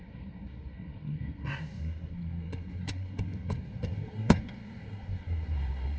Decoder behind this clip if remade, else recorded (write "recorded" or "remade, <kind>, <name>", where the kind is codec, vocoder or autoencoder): remade, codec, SNAC